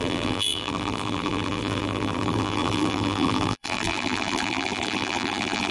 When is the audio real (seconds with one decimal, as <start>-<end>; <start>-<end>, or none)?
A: none